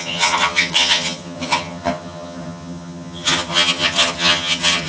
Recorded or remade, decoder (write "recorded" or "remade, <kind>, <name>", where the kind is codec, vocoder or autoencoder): remade, vocoder, HiFi-GAN